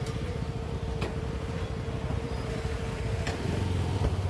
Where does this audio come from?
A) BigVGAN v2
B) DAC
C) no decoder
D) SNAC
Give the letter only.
A